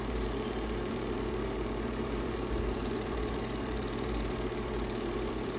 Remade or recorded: remade